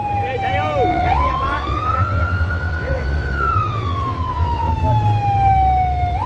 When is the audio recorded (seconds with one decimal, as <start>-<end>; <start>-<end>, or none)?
0.0-0.9; 4.7-6.3